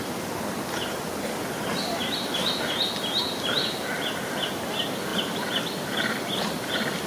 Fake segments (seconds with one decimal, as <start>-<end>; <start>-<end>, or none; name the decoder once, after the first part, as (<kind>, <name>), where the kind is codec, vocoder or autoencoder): 0.0-7.1 (vocoder, BigVGAN v2)